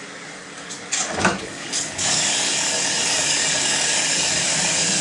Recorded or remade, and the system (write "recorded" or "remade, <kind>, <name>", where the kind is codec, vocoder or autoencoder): remade, codec, DAC